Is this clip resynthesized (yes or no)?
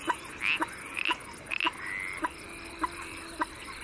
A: no